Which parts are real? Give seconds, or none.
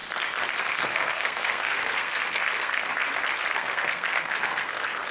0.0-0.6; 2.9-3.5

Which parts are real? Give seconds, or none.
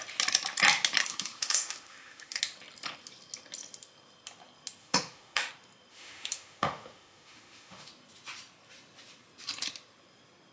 0.0-1.0; 2.4-4.8; 5.5-5.9; 7.9-10.5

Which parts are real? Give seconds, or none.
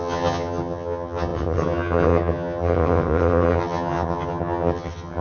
none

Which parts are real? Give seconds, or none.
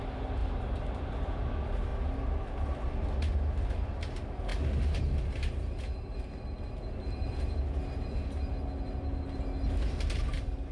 0.0-10.7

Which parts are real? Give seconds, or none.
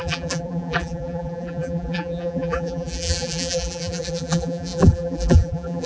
none